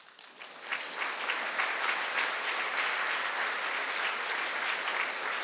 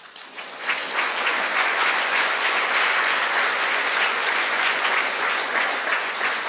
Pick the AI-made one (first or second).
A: second